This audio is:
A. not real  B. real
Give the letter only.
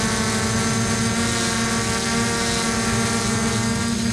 B